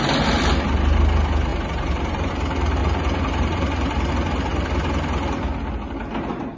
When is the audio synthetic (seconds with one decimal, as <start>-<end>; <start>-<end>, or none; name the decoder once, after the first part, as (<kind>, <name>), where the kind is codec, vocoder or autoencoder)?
1.5-2.3 (vocoder, BigVGAN v2); 2.8-4.1